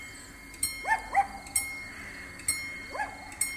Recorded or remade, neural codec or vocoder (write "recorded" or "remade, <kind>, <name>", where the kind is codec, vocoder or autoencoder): recorded